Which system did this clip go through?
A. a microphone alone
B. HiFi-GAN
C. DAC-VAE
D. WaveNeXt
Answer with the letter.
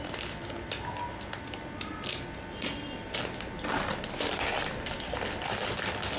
A